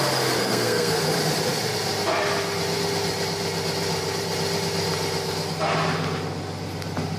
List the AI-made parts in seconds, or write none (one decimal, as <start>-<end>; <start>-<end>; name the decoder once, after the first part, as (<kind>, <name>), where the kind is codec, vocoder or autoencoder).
0.4-1.0 (codec, SNAC)